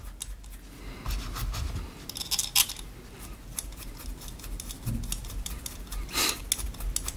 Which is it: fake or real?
real